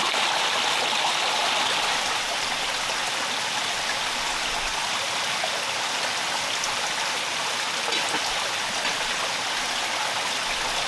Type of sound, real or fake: real